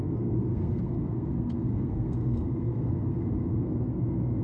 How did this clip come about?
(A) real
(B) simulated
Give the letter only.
B